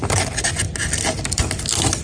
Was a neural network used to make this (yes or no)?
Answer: yes